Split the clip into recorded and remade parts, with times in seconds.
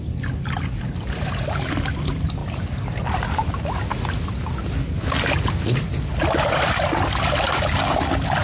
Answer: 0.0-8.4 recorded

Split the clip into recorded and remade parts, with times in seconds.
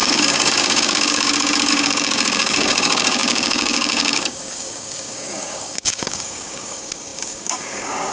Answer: 0.0-8.1 remade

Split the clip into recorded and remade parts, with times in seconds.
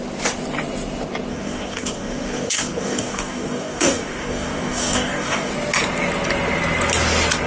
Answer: 0.0-1.3 recorded; 1.3-5.5 remade; 5.5-7.5 recorded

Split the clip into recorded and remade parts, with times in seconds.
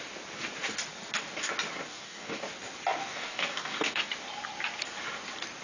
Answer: 0.0-1.9 recorded; 1.9-2.4 remade; 2.4-3.0 recorded; 3.0-4.0 remade; 4.0-5.6 recorded